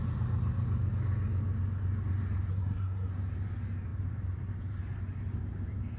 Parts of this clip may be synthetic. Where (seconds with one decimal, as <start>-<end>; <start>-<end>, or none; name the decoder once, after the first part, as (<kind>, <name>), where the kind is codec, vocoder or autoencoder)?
2.5-3.1 (codec, SNAC)